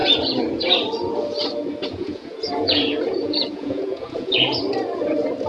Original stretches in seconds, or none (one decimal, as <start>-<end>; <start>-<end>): 0.6-1.8; 4.6-5.5